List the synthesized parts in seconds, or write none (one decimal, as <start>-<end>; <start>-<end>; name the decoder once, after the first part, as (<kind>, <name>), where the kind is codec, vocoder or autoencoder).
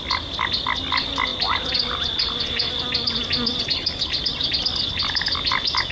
none